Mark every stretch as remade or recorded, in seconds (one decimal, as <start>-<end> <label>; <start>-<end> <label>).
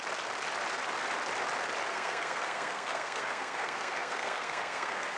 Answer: 0.0-1.9 recorded; 1.9-5.2 remade